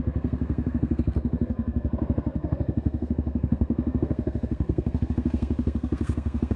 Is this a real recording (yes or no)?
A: no